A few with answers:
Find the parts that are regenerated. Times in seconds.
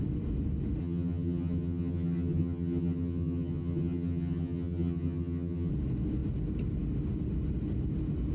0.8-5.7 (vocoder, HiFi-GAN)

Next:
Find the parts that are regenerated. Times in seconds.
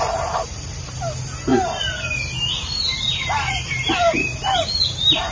none